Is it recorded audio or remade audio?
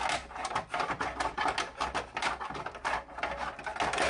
recorded